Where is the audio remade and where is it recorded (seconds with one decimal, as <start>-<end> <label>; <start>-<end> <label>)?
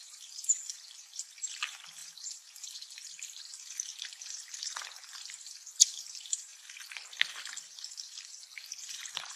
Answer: 0.0-6.5 remade; 6.5-7.7 recorded; 7.7-9.4 remade